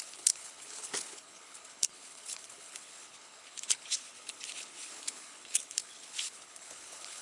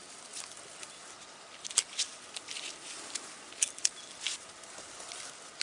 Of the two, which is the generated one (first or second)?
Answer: first